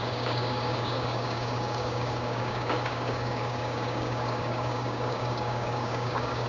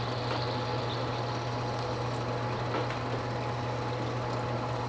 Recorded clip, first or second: second